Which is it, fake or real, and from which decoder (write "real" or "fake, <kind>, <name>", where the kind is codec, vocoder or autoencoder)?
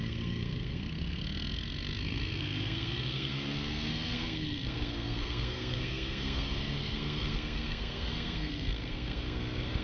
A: fake, codec, SNAC